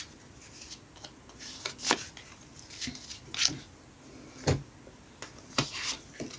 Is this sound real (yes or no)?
yes